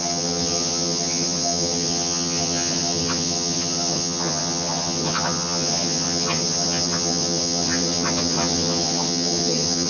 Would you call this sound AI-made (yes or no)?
yes